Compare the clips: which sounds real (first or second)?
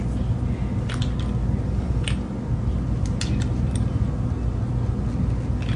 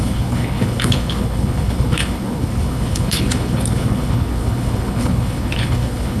first